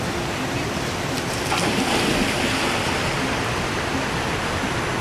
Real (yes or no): no